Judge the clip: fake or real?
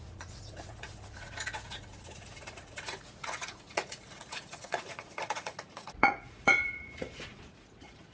fake